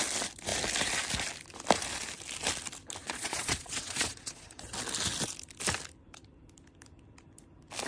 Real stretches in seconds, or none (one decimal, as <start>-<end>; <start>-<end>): 0.0-3.0; 4.6-7.9